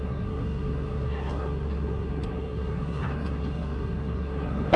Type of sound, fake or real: fake